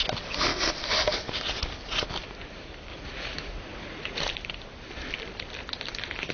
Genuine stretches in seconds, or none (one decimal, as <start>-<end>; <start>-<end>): 0.0-2.9; 4.3-6.3